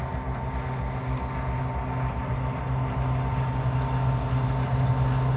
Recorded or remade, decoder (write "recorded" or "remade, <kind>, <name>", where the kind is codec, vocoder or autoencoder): recorded